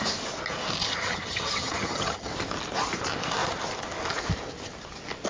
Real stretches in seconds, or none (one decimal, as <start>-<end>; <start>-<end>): 0.0-0.8; 2.3-5.3